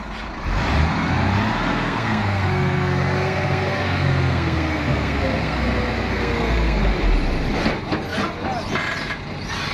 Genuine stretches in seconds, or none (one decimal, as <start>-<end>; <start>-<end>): 0.0-1.7; 6.8-9.7